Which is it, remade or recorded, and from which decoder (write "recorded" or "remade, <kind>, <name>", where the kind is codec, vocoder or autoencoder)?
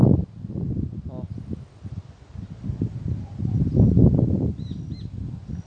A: recorded